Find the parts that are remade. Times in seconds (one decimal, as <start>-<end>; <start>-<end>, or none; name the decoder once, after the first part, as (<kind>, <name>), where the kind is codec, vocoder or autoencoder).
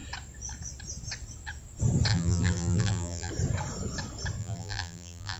2.1-3.3 (vocoder, BigVGAN v2); 4.4-5.4